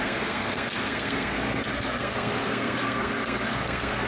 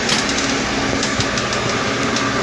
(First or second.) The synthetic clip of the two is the first